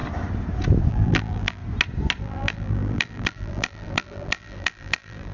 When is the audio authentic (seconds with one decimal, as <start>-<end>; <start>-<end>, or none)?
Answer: 0.0-0.9; 1.6-2.2